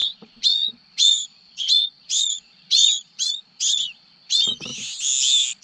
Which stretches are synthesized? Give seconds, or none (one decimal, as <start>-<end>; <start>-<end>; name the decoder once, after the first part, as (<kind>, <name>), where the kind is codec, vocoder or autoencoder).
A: 0.0-4.7 (vocoder, Vocos)